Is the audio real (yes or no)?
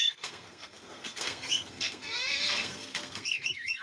no